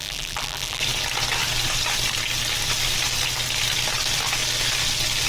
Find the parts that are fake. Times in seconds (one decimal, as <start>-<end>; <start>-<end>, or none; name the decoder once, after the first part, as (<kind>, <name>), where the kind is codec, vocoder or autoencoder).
0.0-0.8 (vocoder, BigVGAN v2)